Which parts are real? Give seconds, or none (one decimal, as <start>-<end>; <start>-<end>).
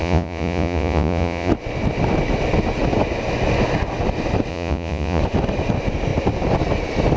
1.5-4.5; 5.2-7.2